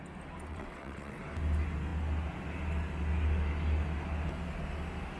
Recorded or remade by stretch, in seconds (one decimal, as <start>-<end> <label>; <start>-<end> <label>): 0.0-0.5 recorded; 0.5-1.2 remade; 1.2-5.2 recorded